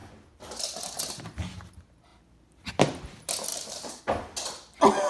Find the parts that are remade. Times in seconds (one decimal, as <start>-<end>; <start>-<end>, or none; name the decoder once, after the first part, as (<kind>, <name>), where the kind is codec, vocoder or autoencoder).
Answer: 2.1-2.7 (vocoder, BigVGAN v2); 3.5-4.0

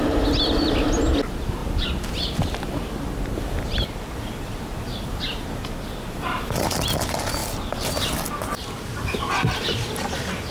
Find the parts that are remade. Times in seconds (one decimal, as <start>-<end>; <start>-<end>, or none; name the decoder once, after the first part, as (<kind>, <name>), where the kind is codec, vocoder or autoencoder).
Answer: 1.6-6.8 (vocoder, BigVGAN v2); 7.4-10.5

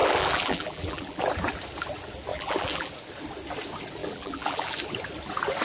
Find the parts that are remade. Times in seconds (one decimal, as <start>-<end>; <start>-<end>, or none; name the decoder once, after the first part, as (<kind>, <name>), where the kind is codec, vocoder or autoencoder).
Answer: 0.0-1.2 (vocoder, BigVGAN v2); 2.3-2.9; 4.0-4.7

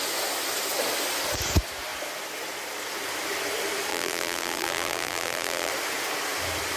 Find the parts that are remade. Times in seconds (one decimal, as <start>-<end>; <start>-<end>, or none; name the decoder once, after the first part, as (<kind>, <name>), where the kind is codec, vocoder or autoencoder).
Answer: 3.9-5.7 (vocoder, BigVGAN v2)

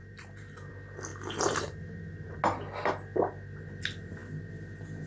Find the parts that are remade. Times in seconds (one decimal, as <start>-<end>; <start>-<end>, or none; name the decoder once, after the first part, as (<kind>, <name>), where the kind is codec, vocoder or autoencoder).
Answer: 0.0-0.7 (vocoder, BigVGAN v2); 1.1-2.4

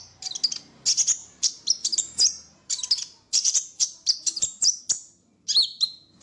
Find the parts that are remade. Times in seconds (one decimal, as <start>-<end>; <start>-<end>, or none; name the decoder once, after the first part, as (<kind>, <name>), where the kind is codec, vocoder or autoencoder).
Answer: 1.2-4.8 (vocoder, BigVGAN v2)